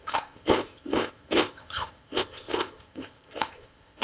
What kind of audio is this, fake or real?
fake